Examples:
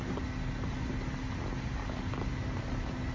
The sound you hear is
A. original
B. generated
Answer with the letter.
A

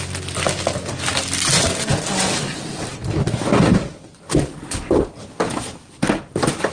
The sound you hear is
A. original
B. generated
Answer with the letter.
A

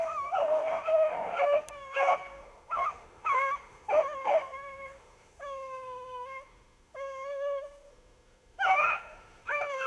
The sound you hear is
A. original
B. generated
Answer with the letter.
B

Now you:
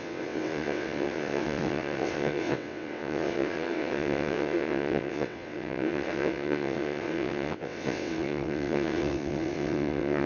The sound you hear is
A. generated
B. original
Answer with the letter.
A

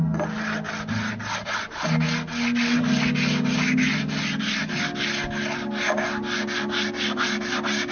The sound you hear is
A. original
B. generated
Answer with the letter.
A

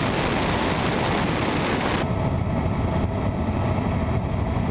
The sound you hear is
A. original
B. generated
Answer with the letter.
A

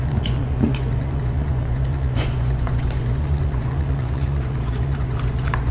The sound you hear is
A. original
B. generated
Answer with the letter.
B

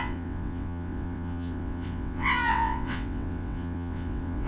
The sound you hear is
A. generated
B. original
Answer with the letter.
A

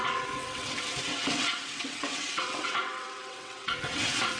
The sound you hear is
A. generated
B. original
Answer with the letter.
A